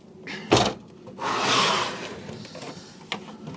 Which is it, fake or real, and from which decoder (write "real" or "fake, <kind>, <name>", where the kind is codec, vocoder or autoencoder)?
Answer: real